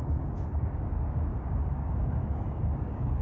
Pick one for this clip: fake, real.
fake